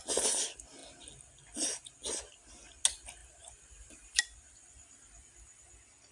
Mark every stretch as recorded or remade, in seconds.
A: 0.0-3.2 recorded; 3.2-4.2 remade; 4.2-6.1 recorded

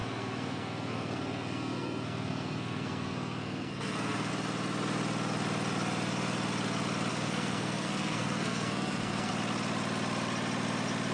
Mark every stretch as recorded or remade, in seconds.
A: 0.0-4.3 remade; 4.3-7.1 recorded; 7.1-9.3 remade; 9.3-11.1 recorded

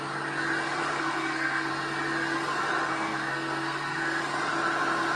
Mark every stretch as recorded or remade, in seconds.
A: 0.0-0.8 recorded; 0.8-1.7 remade; 1.7-2.9 recorded; 2.9-4.2 remade; 4.2-5.2 recorded

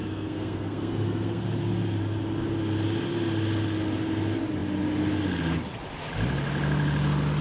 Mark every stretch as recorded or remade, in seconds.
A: 0.0-1.4 remade; 1.4-7.4 recorded